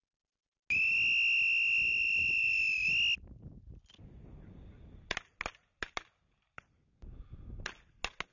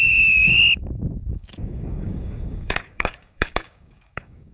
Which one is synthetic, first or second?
second